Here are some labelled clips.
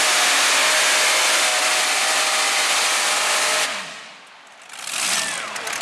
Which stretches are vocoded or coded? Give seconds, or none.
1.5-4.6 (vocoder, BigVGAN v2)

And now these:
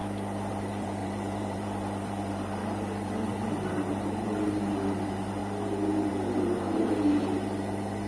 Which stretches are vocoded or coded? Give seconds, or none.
0.5-5.4 (vocoder, BigVGAN v2); 6.1-8.1